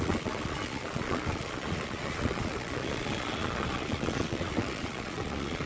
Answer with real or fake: fake